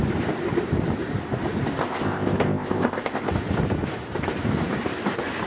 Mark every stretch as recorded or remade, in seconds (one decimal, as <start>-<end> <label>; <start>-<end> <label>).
0.0-1.8 recorded; 1.8-3.3 remade; 3.3-5.5 recorded